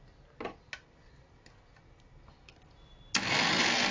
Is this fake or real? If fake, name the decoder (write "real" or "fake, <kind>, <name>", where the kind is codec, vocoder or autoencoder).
real